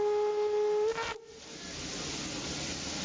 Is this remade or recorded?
recorded